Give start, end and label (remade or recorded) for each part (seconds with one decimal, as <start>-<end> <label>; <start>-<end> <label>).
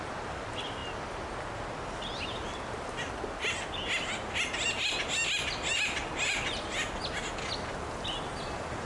0.0-8.9 recorded